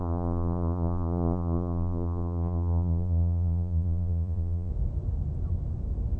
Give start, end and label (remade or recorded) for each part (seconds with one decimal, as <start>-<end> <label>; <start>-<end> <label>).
0.0-4.7 remade; 4.7-6.2 recorded